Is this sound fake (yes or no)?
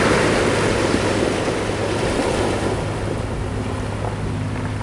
no